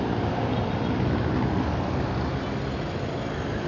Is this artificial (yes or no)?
no